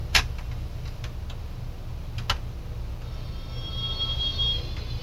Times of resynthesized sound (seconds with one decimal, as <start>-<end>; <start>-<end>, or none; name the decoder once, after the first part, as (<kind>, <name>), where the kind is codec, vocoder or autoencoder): 0.0-1.0 (vocoder, BigVGAN v2)